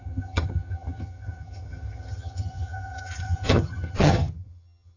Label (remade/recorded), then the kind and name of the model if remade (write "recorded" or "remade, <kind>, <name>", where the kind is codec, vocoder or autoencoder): remade, vocoder, HiFi-GAN